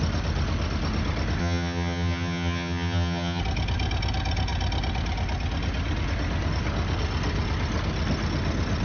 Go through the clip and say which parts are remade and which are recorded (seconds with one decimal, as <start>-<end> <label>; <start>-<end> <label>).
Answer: 0.0-1.4 recorded; 1.4-3.4 remade; 3.4-8.8 recorded